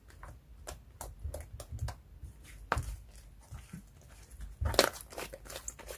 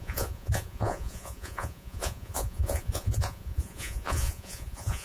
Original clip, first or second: first